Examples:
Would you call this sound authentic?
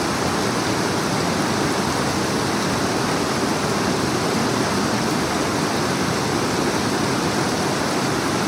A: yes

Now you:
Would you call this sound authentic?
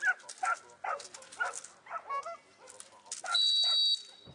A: yes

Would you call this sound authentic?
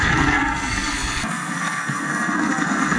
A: no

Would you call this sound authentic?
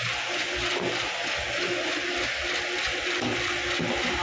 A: yes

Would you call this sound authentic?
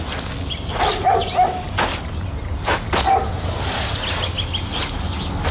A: yes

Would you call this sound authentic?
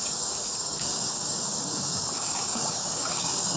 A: no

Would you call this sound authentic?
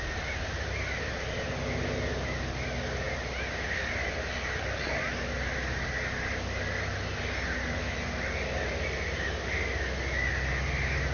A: yes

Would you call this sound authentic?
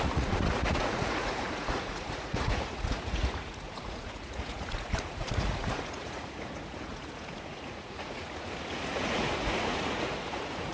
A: no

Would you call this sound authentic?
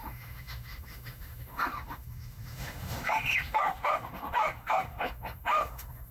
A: no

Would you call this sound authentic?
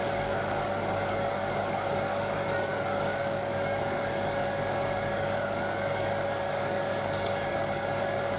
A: no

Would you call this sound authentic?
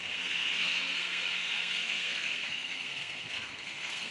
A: no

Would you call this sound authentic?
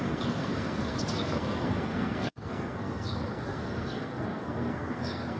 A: no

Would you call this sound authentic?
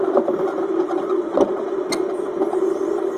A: yes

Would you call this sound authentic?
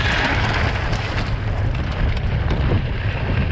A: yes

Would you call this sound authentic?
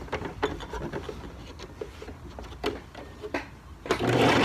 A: yes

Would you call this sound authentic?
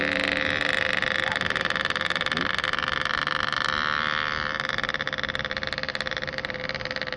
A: yes